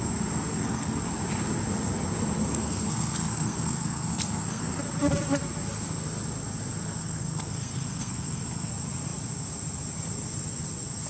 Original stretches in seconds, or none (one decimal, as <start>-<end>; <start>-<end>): 0.0-0.5; 1.0-2.5; 4.8-7.0; 8.7-11.1